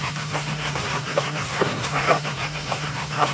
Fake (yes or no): yes